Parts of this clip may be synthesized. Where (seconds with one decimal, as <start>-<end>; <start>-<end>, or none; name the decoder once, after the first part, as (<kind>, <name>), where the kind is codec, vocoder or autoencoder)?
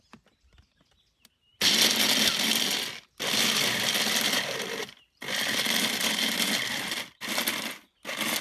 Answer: 4.8-5.4 (vocoder, BigVGAN v2)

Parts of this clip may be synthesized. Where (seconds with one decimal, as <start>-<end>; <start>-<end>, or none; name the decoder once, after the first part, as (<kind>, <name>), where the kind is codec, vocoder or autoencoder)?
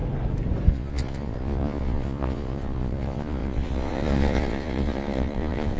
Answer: 0.7-5.8 (vocoder, Vocos)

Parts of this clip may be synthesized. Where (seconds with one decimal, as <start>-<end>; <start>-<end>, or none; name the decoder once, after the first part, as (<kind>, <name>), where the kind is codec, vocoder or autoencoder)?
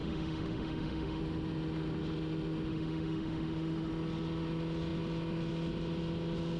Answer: 0.0-1.2 (autoencoder, DAC-VAE); 2.7-3.9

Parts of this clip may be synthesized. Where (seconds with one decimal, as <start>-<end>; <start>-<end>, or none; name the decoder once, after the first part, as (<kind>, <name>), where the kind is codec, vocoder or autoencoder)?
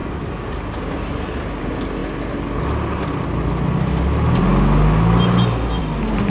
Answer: 0.0-0.5 (codec, DAC)